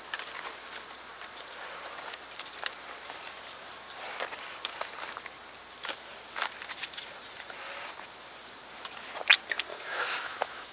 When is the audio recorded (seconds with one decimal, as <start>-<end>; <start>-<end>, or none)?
0.0-9.7

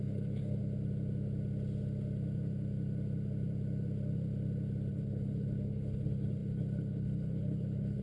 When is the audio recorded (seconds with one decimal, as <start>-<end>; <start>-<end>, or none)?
0.6-4.9

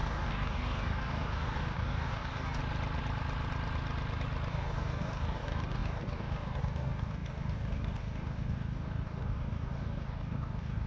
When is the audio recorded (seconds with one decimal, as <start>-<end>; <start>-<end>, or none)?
2.6-4.5

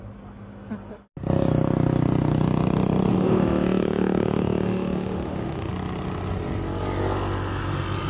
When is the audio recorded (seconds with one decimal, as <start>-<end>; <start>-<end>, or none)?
0.0-3.1; 5.7-8.1

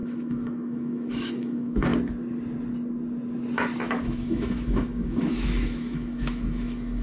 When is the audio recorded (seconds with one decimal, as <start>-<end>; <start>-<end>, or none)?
1.9-3.9